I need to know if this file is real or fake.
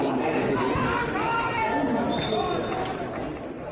real